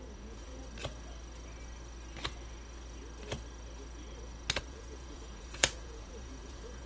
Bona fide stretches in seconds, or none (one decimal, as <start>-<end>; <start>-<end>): 0.5-4.6